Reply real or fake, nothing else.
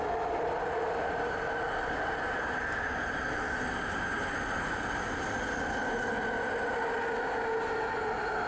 real